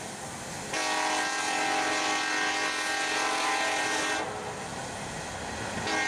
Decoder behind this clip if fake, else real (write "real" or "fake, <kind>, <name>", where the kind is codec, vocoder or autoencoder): real